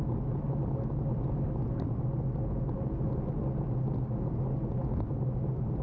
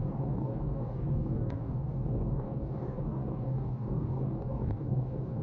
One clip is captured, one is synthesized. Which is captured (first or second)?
first